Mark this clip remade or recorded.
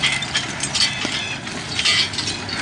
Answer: recorded